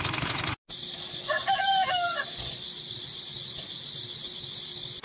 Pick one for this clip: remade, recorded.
recorded